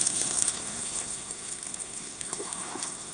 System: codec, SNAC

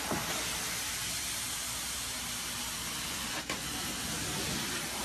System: none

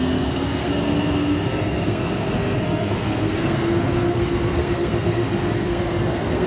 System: codec, SNAC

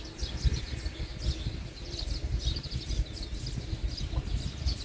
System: none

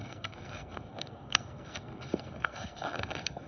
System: codec, SNAC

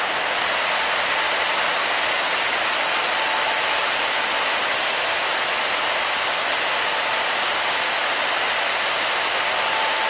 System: none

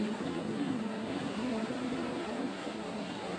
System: codec, SNAC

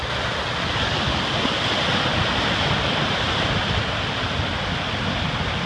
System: none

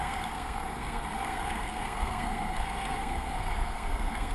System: codec, SNAC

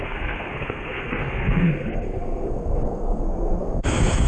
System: codec, SNAC